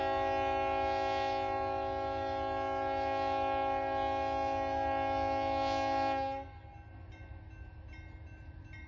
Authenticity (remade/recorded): recorded